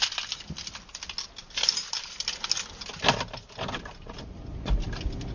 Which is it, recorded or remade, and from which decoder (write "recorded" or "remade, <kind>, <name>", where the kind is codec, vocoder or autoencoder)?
recorded